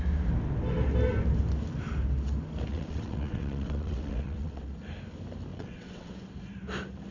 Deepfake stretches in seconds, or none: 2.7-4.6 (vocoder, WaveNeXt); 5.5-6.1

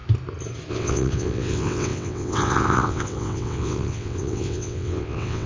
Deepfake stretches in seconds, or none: 0.7-5.5 (vocoder, WaveNeXt)

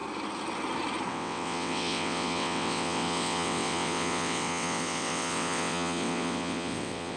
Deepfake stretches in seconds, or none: 1.1-7.2 (vocoder, WaveNeXt)

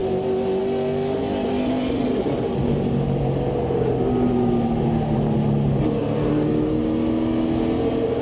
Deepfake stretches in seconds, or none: none

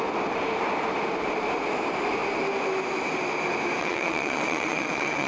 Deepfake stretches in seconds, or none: 3.8-5.3 (vocoder, WaveNeXt)

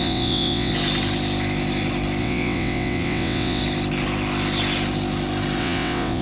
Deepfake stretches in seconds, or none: 0.0-0.7 (vocoder, WaveNeXt); 2.2-3.6; 5.6-6.2

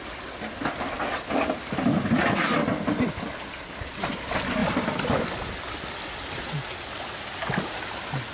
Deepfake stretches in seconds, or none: none

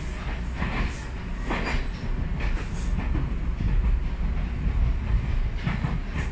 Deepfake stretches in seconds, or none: none